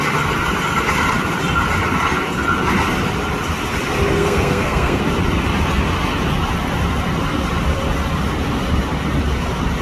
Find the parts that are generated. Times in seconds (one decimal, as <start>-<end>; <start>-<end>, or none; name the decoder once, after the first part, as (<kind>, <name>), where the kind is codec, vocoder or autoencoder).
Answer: 4.1-5.0 (codec, SNAC)